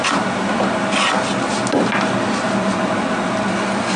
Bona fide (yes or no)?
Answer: yes